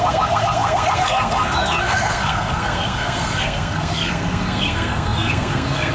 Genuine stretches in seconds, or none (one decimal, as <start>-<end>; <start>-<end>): none